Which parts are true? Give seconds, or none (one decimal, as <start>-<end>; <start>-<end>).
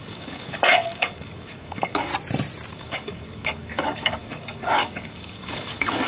2.1-2.7